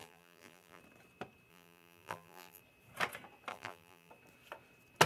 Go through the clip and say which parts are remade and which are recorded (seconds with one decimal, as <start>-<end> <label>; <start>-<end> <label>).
0.0-0.8 remade; 0.8-1.5 recorded; 1.5-2.6 remade; 2.6-3.5 recorded; 3.5-4.1 remade; 4.1-5.1 recorded